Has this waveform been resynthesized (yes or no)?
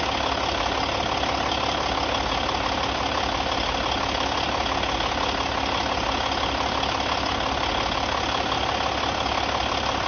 no